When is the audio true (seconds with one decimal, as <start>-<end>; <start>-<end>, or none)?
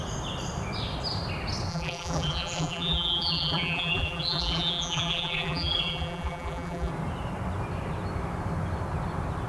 0.0-1.7; 6.9-9.5